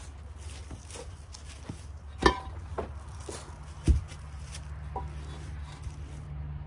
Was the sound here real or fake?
real